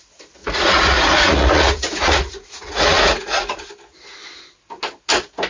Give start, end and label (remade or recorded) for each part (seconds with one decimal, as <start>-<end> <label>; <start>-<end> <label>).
0.0-0.4 recorded; 0.4-3.7 remade; 3.7-5.5 recorded